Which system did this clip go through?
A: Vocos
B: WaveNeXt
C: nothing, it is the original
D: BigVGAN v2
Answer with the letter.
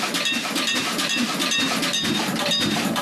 D